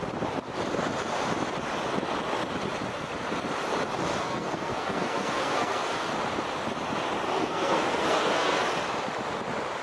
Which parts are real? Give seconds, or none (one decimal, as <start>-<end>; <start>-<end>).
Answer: 0.0-4.1; 6.1-7.3; 8.7-9.8